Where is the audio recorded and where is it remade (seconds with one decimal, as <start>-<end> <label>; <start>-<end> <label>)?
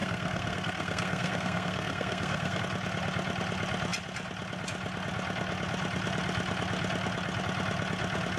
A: 0.0-2.6 remade; 2.6-8.4 recorded